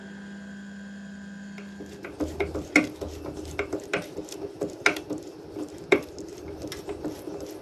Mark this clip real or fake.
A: real